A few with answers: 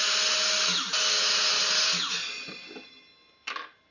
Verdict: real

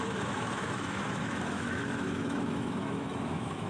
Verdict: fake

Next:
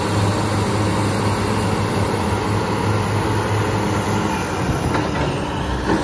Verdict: real